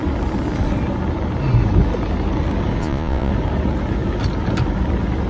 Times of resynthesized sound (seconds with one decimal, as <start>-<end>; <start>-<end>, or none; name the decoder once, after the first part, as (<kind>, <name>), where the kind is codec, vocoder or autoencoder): 2.8-3.3 (vocoder, Vocos)